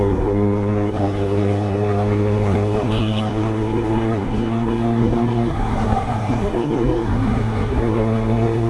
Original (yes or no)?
no